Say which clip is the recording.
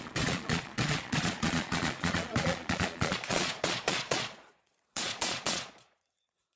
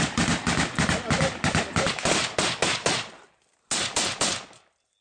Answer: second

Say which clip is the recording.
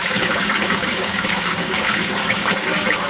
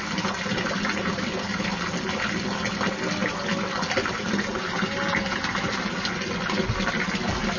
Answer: second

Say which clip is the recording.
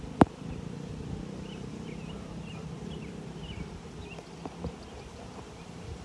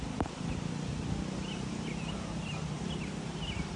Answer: second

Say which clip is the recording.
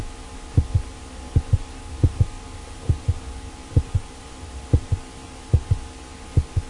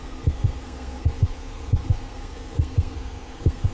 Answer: first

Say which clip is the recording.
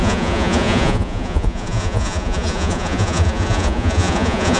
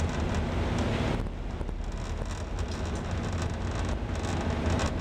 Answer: second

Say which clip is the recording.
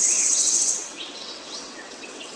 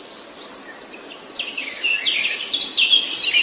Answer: second